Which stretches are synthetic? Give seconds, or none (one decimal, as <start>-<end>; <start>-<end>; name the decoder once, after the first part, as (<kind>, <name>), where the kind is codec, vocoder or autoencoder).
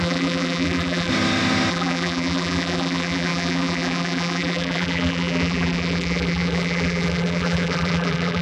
0.0-1.1 (vocoder, BigVGAN v2); 1.7-8.4